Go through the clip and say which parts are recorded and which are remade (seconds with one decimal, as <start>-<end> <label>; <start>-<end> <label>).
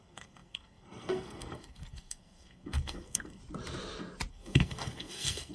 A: 0.0-3.4 remade; 3.4-4.3 recorded; 4.3-5.5 remade